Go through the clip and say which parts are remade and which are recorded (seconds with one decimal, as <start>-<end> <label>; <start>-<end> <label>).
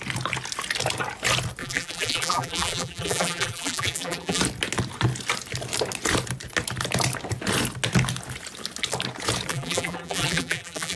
0.0-1.6 recorded; 1.6-4.4 remade; 4.4-9.5 recorded; 9.5-11.0 remade